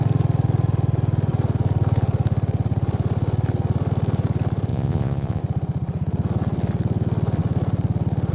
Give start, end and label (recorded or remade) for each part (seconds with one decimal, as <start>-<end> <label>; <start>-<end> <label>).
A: 0.0-4.7 recorded; 4.7-5.4 remade; 5.4-8.3 recorded